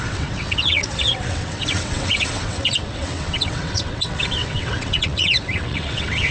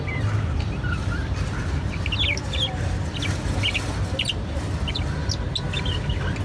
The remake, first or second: first